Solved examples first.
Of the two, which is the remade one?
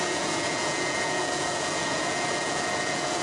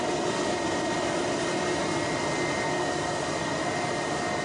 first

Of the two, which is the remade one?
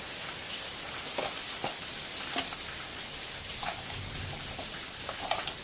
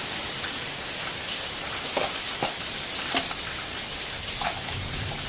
second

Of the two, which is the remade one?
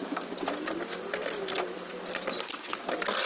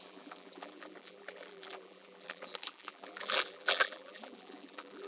second